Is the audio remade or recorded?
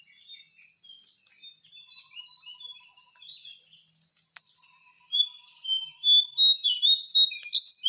recorded